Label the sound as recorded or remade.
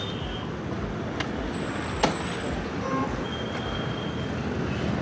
recorded